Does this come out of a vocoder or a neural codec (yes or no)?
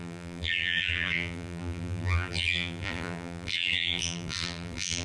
yes